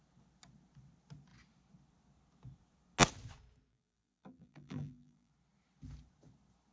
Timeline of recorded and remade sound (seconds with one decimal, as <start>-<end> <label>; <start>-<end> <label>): 0.0-3.7 recorded; 3.7-5.3 remade; 5.3-6.7 recorded